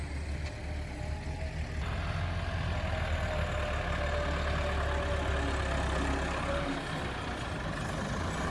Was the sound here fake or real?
real